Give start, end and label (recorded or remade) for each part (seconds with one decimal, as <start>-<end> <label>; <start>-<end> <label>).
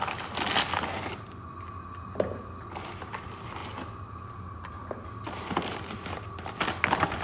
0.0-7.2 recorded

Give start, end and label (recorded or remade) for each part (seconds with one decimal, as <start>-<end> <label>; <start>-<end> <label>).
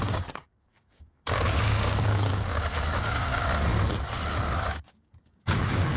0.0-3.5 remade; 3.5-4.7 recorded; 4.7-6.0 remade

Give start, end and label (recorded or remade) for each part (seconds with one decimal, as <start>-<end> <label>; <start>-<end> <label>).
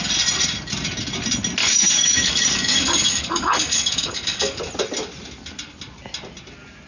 0.0-1.6 recorded; 1.6-4.6 remade; 4.6-6.9 recorded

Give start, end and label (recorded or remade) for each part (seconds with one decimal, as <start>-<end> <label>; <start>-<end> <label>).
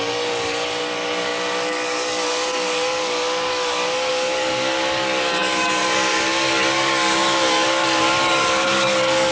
0.0-9.3 remade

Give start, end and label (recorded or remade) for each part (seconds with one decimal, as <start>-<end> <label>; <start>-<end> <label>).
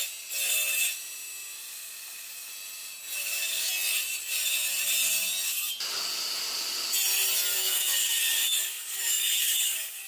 0.0-1.6 recorded; 1.6-2.5 remade; 2.5-3.2 recorded; 3.2-3.7 remade; 3.7-7.5 recorded; 7.5-10.1 remade